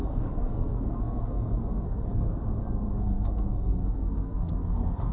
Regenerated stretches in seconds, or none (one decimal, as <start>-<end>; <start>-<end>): 0.0-2.4; 3.0-5.1